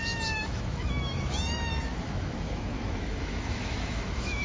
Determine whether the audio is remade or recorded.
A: remade